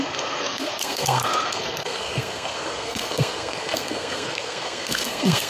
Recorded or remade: remade